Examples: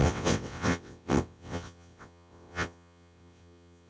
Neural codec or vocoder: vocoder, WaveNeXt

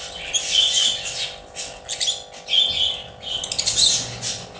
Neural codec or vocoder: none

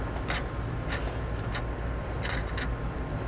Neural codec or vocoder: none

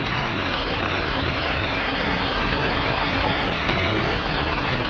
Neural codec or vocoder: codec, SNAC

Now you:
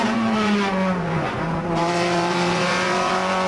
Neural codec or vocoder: vocoder, Vocos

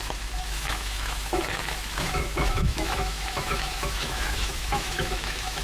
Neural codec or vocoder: autoencoder, DAC-VAE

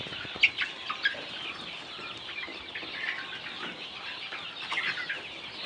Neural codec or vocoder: none